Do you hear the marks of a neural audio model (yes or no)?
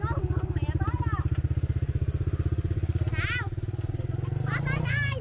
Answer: no